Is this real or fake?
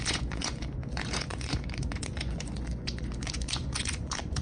fake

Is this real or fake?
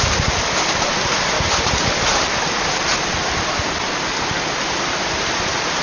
real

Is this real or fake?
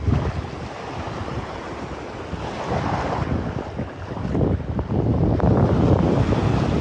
real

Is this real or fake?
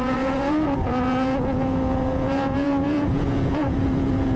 fake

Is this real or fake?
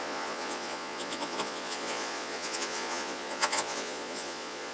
fake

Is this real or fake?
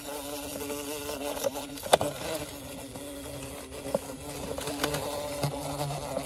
real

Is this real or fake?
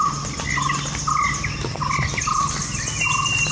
real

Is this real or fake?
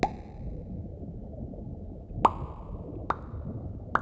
real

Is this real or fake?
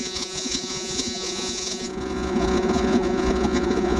fake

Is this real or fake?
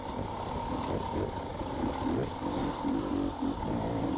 real